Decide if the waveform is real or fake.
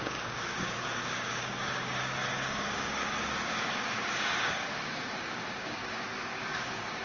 fake